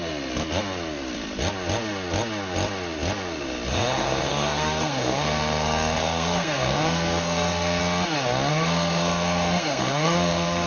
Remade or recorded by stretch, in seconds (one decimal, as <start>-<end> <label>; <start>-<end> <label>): 0.0-3.7 recorded; 3.7-7.8 remade; 7.8-8.5 recorded; 8.5-10.7 remade